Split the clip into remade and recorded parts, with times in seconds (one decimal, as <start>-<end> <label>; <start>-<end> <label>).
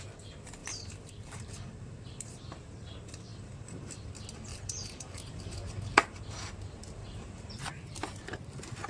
0.0-0.6 recorded; 0.6-2.4 remade; 2.4-3.3 recorded; 3.3-4.1 remade; 4.1-4.5 recorded; 4.5-6.2 remade; 6.2-7.0 recorded; 7.0-7.6 remade; 7.6-8.9 recorded